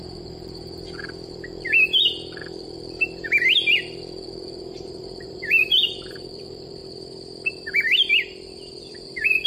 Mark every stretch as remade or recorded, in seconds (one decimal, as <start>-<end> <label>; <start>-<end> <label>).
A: 0.0-6.8 remade; 6.8-7.5 recorded; 7.5-9.5 remade